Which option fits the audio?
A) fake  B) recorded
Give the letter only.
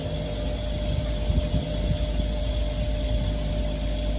B